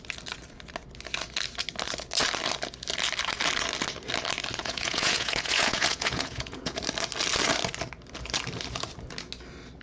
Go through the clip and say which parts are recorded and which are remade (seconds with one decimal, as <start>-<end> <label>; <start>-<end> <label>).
0.0-4.6 recorded; 4.6-6.8 remade; 6.8-9.8 recorded